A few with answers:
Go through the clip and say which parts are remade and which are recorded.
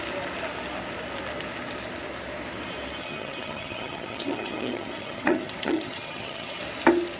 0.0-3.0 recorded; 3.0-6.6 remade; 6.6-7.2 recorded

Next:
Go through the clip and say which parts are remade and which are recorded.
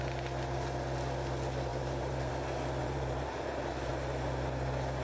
0.0-1.7 recorded; 1.7-2.3 remade; 2.3-2.8 recorded; 2.8-3.9 remade; 3.9-5.0 recorded